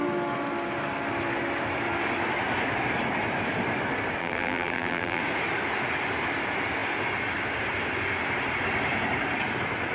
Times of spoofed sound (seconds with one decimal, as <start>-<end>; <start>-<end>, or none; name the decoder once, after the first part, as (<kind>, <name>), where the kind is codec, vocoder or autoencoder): 4.2-5.2 (vocoder, BigVGAN v2)